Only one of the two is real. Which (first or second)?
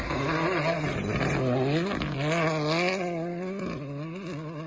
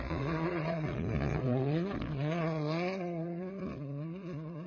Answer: first